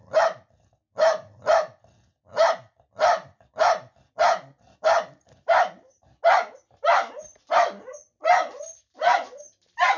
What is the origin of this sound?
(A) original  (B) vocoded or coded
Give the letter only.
A